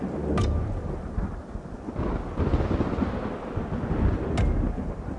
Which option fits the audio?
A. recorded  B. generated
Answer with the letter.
A